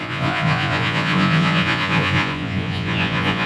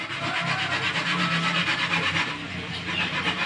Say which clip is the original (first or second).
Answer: second